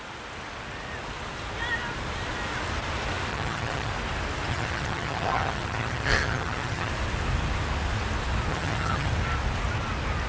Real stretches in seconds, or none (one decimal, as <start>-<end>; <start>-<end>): 0.0-3.3; 3.9-4.5; 6.9-8.5; 9.1-10.3